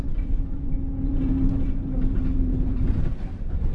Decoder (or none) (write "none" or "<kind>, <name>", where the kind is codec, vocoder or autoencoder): vocoder, BigVGAN v2